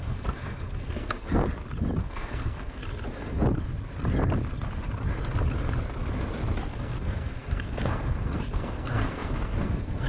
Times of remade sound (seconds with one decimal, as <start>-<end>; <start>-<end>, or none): 0.0-1.4; 2.0-2.8; 6.7-10.1